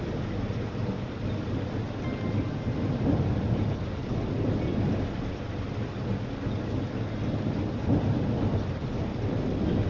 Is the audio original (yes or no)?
yes